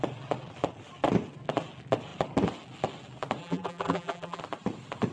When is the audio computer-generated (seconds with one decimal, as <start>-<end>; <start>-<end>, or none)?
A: 3.4-4.4